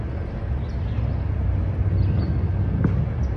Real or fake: real